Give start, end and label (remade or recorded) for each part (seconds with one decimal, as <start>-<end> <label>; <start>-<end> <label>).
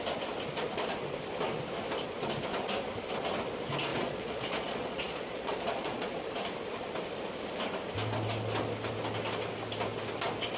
0.0-3.9 recorded; 3.9-6.1 remade; 6.1-10.6 recorded